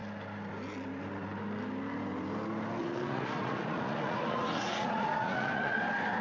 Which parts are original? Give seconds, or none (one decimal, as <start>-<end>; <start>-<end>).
0.0-2.8; 5.8-6.2